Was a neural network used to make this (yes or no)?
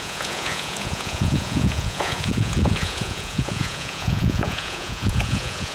yes